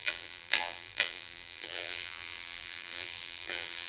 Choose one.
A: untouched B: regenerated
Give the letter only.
B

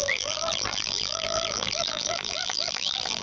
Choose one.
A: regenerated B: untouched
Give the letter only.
A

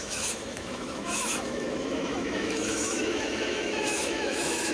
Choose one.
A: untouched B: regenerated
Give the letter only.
B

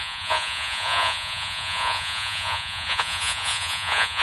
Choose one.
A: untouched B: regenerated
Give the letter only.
B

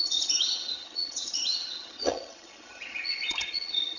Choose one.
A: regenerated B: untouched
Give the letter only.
A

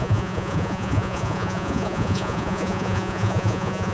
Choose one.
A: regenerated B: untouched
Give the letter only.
A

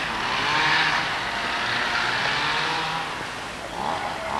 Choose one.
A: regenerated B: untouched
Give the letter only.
B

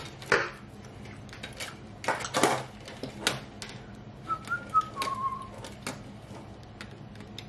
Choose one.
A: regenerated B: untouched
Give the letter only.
B